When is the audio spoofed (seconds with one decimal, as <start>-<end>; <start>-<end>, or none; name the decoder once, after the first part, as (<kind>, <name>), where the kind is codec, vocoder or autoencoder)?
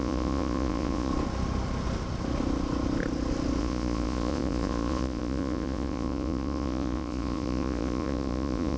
0.0-1.1 (vocoder, Vocos); 3.6-8.8